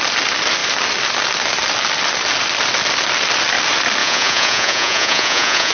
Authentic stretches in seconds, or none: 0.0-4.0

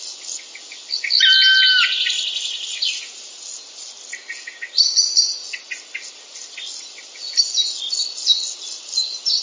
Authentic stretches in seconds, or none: 0.0-2.7; 3.3-9.4